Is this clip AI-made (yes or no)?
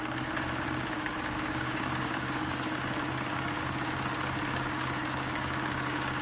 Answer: yes